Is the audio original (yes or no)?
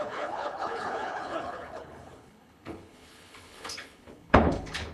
no